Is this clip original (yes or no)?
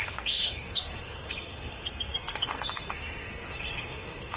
no